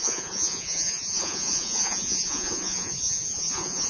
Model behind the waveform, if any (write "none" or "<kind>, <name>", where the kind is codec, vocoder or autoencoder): vocoder, Vocos